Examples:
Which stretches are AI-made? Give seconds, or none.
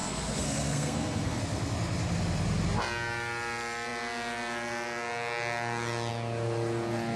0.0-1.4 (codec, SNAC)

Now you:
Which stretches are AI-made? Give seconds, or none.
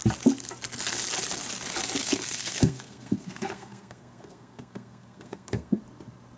2.0-5.8 (codec, SNAC)